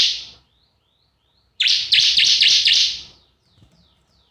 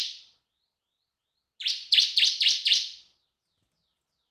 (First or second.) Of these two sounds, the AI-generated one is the first